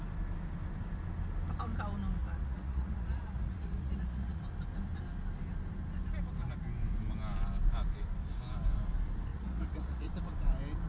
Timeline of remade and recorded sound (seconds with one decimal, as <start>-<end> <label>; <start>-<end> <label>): 0.0-2.2 recorded; 2.2-4.4 remade; 4.4-9.3 recorded; 9.3-10.1 remade; 10.1-10.9 recorded